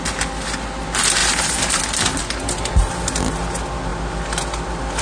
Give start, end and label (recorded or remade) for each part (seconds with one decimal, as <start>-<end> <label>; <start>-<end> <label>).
0.0-1.2 recorded; 1.2-1.8 remade; 1.8-5.0 recorded